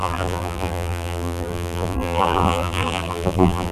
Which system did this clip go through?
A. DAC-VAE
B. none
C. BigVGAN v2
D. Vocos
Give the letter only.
C